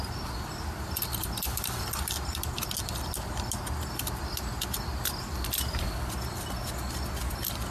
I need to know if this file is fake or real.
real